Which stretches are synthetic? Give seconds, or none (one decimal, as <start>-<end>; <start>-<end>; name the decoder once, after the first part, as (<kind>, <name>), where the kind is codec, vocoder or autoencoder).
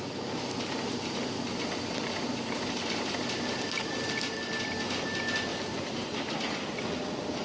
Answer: 5.5-6.2 (vocoder, BigVGAN v2)